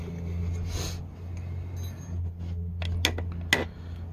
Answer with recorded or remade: recorded